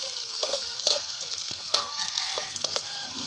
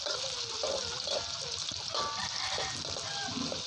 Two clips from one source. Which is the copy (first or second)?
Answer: first